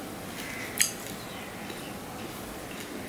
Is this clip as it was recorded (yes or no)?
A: yes